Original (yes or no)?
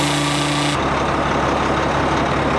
yes